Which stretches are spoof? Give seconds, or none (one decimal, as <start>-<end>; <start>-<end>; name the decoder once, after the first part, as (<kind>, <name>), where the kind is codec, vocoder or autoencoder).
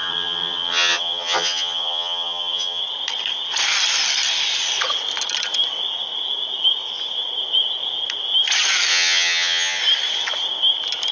0.0-2.8 (vocoder, HiFi-GAN); 8.9-9.8